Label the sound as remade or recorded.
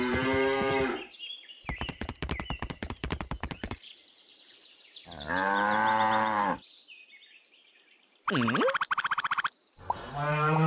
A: remade